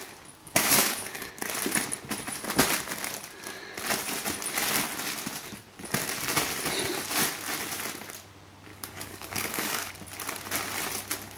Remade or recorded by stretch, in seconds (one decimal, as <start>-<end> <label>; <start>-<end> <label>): 0.0-0.4 recorded; 0.4-1.3 remade; 1.3-8.7 recorded; 8.7-9.9 remade; 9.9-11.4 recorded